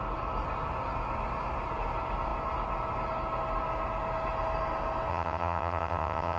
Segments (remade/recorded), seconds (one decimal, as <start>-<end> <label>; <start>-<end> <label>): 0.0-5.1 recorded; 5.1-6.4 remade